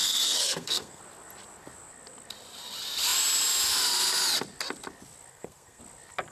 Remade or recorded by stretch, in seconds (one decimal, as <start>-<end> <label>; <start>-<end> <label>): 0.0-1.0 remade; 1.0-5.3 recorded; 5.3-5.8 remade; 5.8-6.3 recorded